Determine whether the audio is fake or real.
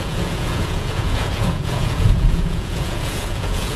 fake